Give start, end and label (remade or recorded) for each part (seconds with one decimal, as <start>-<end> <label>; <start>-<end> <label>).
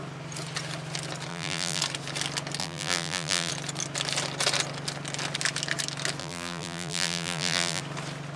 0.0-1.3 recorded; 1.3-1.8 remade; 1.8-2.6 recorded; 2.6-3.5 remade; 3.5-6.2 recorded; 6.2-7.8 remade; 7.8-8.4 recorded